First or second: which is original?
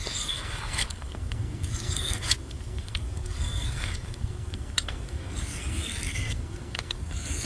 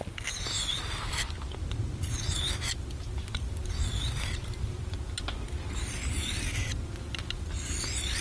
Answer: second